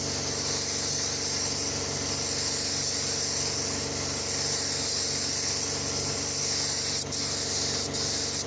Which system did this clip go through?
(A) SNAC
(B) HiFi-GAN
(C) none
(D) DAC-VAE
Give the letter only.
C